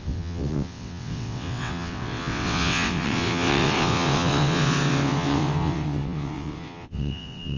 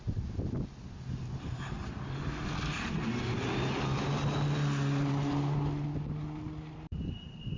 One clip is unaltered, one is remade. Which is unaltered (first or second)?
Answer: second